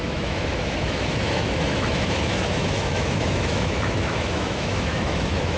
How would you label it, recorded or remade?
remade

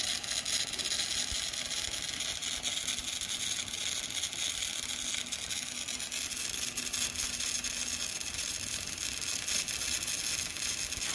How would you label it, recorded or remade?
recorded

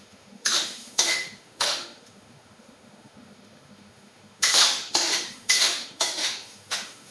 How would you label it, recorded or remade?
remade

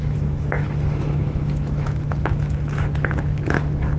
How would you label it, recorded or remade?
remade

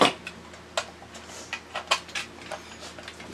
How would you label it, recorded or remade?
recorded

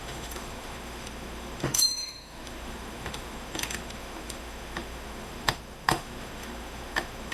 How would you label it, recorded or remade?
remade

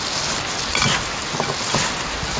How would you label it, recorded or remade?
recorded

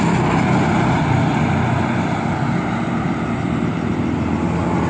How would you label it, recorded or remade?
recorded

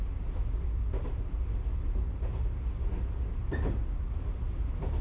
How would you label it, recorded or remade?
recorded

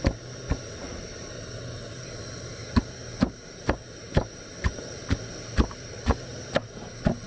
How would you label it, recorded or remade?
recorded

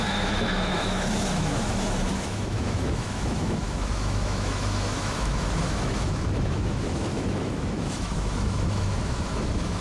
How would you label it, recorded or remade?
remade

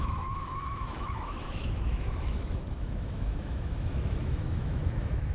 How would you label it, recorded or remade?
remade